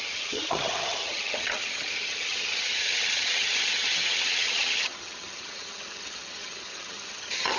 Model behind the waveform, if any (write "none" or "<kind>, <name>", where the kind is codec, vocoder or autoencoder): vocoder, HiFi-GAN